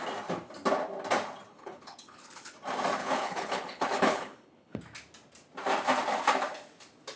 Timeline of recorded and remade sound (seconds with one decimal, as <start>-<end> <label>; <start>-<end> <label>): 0.0-1.5 recorded; 1.5-2.5 remade; 2.5-3.0 recorded; 3.0-4.8 remade; 4.8-7.2 recorded